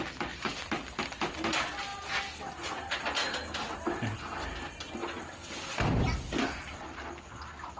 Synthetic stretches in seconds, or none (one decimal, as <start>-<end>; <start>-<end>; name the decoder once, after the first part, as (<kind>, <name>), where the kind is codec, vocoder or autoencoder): 0.0-1.9 (vocoder, BigVGAN v2); 2.8-5.0; 6.5-7.8